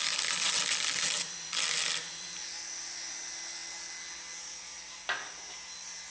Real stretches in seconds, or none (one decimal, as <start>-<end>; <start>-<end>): 3.6-4.9